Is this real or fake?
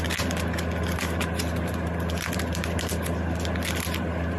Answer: real